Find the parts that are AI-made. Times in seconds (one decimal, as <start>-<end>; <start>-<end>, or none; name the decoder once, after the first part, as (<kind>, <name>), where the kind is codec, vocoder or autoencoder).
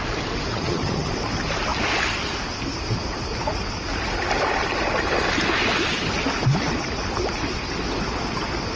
0.5-1.1 (vocoder, HiFi-GAN)